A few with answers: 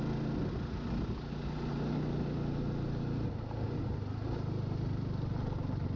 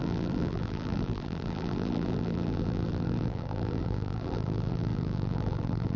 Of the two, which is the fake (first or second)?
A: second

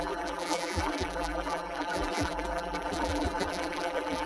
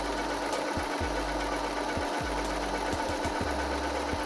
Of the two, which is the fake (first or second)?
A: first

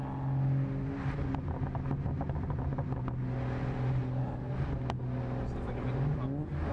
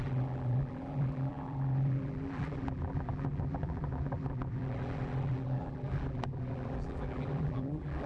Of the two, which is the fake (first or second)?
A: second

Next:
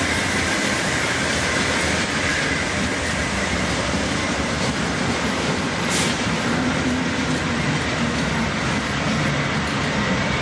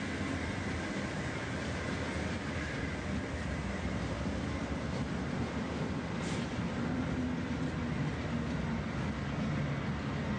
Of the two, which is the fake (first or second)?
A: first